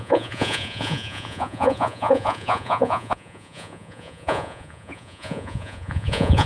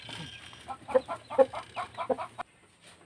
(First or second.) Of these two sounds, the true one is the second